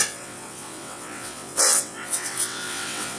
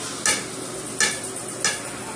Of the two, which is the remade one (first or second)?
first